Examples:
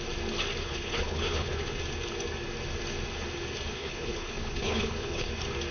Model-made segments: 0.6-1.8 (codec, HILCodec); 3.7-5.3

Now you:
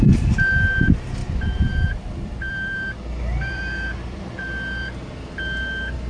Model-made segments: 1.2-4.2 (vocoder, BigVGAN v2)

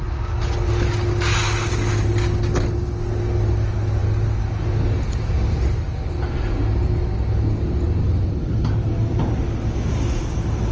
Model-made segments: none

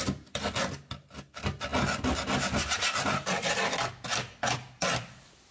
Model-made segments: none

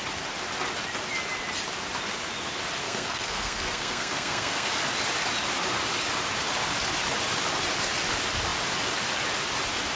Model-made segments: 2.8-4.7 (codec, SNAC)

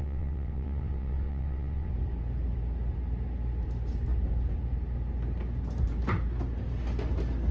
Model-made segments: 0.0-1.9 (vocoder, WaveNeXt)